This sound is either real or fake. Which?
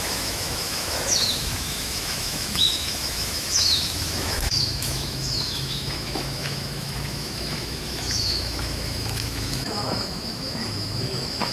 fake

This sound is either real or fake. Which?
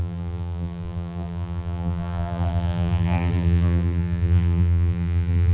fake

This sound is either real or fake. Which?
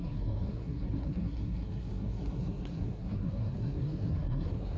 fake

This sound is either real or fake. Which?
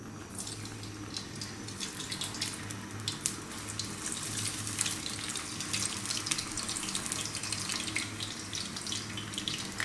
real